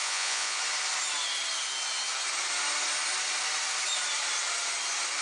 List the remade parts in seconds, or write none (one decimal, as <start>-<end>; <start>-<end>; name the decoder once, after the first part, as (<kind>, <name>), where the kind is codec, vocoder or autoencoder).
0.0-0.6 (vocoder, Vocos)